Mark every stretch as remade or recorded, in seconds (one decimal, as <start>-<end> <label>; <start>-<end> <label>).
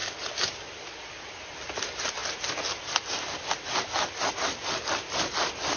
0.0-5.8 recorded